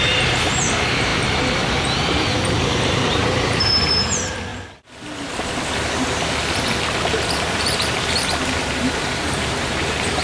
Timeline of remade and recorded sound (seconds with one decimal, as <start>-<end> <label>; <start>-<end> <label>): 0.0-4.5 remade; 4.5-7.5 recorded; 7.5-10.2 remade

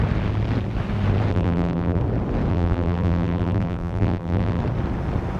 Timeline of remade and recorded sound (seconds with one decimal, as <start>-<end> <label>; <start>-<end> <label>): 0.0-1.3 recorded; 1.3-2.0 remade; 2.0-2.5 recorded; 2.5-4.6 remade; 4.6-5.4 recorded

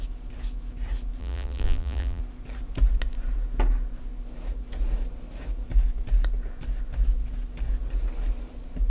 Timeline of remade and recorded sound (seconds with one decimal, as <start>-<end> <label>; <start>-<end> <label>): 0.0-1.2 recorded; 1.2-2.2 remade; 2.2-8.9 recorded

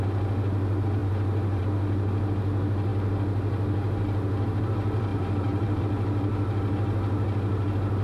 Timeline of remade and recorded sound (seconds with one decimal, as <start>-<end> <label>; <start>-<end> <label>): 0.0-5.1 recorded; 5.1-5.8 remade; 5.8-8.0 recorded

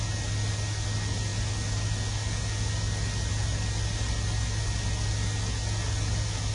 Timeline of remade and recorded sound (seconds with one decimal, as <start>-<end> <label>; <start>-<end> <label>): 0.0-6.5 recorded

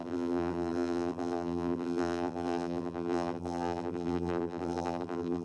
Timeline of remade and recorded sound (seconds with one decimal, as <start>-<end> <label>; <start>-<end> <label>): 0.0-5.4 remade

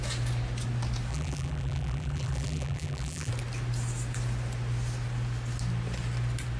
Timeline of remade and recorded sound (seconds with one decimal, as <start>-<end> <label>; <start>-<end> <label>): 0.0-1.1 recorded; 1.1-3.3 remade; 3.3-6.6 recorded